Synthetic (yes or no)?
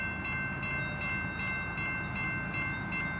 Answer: no